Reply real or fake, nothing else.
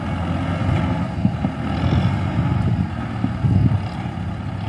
real